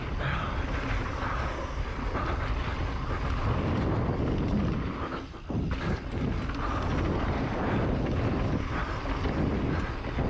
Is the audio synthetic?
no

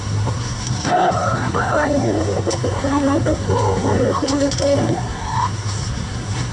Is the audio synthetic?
yes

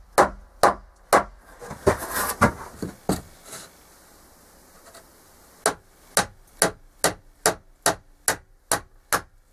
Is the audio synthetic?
no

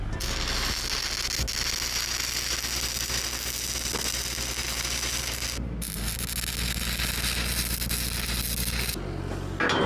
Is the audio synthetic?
no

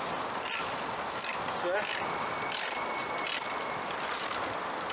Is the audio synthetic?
no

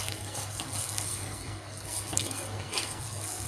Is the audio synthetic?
yes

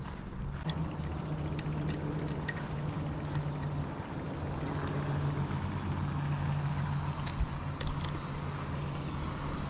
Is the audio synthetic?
no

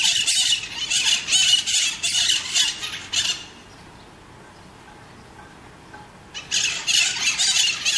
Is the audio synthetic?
no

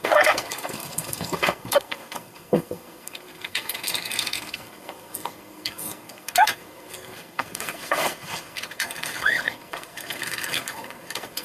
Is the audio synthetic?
yes